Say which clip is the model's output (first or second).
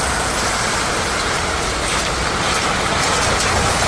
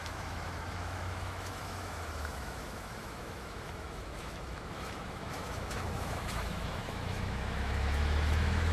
second